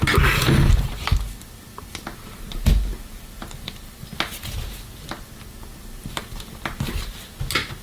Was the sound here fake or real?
real